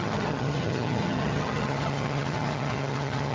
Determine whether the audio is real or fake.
fake